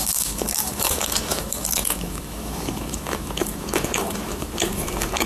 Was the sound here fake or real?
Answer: fake